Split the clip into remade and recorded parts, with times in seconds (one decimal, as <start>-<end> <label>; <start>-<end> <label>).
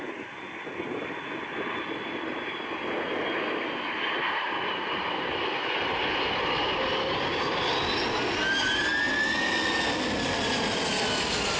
0.0-11.6 recorded